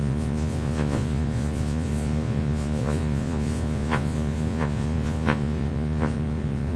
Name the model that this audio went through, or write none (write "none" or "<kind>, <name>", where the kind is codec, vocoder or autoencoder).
vocoder, Vocos